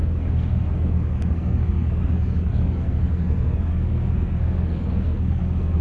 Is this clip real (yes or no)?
no